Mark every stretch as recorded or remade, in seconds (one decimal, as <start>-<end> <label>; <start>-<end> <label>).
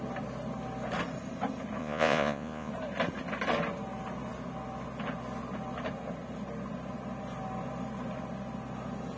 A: 0.0-1.8 recorded; 1.8-2.7 remade; 2.7-9.2 recorded